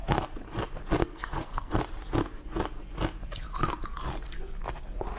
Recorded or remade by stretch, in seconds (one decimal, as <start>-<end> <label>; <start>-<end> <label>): 0.0-1.0 recorded; 1.0-1.7 remade; 1.7-5.2 recorded